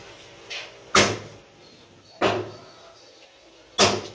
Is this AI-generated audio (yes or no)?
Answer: no